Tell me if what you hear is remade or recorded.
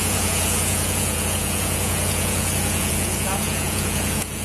remade